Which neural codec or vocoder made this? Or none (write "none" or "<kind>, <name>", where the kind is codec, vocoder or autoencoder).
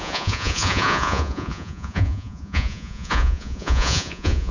vocoder, Vocos